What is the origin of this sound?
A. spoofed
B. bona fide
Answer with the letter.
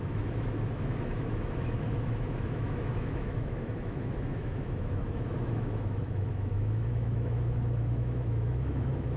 A